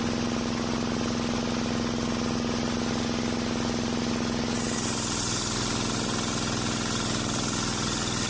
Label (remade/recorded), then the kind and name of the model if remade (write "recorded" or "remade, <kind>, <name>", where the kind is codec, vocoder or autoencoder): recorded